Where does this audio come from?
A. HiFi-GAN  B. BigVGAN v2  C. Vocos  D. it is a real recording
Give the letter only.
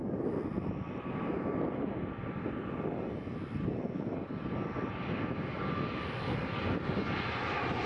D